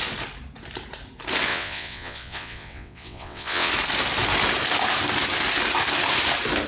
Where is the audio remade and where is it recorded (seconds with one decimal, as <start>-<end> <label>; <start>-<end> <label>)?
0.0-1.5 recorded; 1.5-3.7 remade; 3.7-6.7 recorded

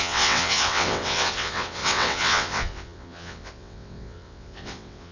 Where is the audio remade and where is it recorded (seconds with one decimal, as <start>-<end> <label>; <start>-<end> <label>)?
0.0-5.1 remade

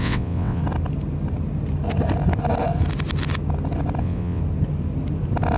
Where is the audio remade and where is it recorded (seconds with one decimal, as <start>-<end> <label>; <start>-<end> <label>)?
0.0-0.6 remade; 0.6-4.0 recorded; 4.0-4.4 remade; 4.4-5.6 recorded

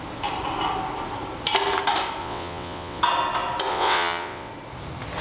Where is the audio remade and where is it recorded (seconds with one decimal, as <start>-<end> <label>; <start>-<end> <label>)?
0.0-2.2 recorded; 2.2-3.0 remade; 3.0-3.7 recorded; 3.7-4.5 remade; 4.5-5.2 recorded

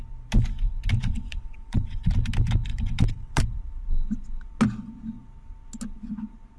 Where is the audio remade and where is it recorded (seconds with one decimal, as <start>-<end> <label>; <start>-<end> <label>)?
0.0-1.0 recorded; 1.0-2.1 remade; 2.1-2.7 recorded; 2.7-3.4 remade; 3.4-6.6 recorded

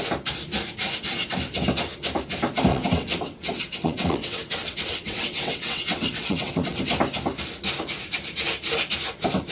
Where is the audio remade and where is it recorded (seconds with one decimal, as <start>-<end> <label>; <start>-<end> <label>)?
0.0-2.7 recorded; 2.7-6.8 remade; 6.8-9.5 recorded